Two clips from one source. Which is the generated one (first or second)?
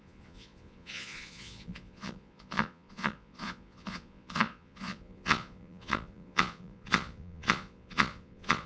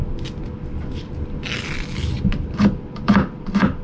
first